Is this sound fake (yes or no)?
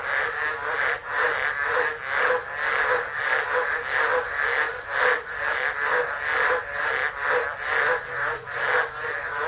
no